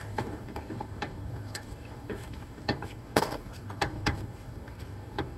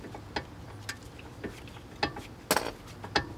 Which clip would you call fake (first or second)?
first